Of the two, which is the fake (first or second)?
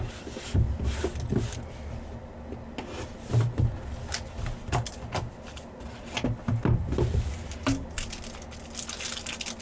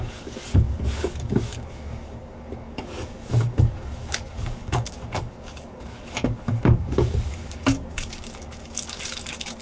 second